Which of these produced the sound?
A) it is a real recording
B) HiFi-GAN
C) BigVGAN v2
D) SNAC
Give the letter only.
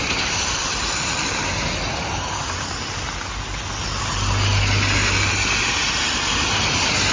A